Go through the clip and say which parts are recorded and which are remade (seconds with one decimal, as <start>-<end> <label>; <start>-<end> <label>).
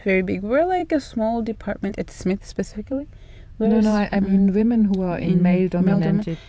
0.0-2.7 recorded; 2.7-6.0 remade; 6.0-6.5 recorded